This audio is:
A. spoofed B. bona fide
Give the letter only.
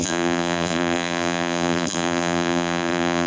A